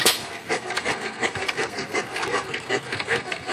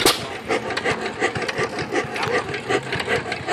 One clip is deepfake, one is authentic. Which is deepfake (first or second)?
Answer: first